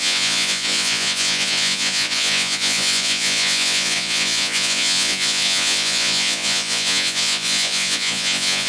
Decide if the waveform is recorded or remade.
remade